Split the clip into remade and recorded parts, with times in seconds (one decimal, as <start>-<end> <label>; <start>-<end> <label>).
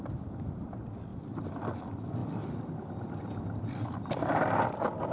0.0-1.1 recorded; 1.1-1.8 remade; 1.8-2.2 recorded; 2.2-5.1 remade